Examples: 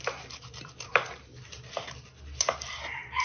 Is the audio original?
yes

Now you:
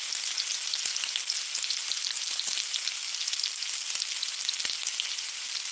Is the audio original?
yes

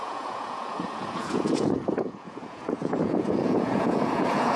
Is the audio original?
no